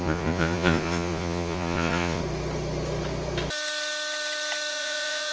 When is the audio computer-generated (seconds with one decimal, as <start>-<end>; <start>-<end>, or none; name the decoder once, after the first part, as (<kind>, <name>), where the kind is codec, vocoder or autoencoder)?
0.0-2.2 (vocoder, Vocos); 4.7-5.3